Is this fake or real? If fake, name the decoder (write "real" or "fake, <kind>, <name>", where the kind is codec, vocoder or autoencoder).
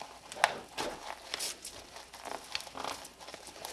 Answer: real